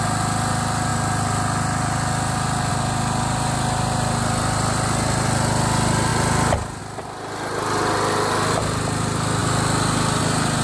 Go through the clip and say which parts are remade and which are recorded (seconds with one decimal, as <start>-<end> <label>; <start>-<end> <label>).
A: 0.0-10.6 recorded